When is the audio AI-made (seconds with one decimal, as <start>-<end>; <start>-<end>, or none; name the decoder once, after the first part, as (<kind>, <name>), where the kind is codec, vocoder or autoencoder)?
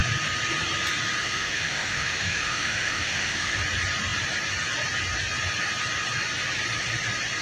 1.2-3.6 (autoencoder, DAC-VAE)